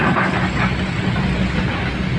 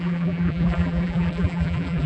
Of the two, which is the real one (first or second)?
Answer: first